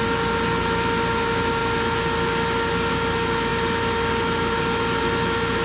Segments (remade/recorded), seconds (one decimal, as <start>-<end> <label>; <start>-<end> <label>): 0.0-5.6 recorded